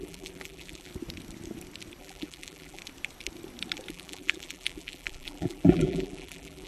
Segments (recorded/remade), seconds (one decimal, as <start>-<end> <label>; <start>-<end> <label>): 0.0-0.9 remade; 0.9-2.0 recorded; 2.0-2.8 remade; 2.8-3.9 recorded; 3.9-6.7 remade